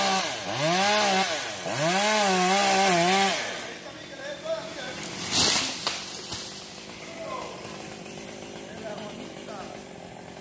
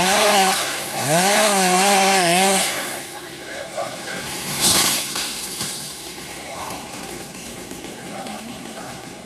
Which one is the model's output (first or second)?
second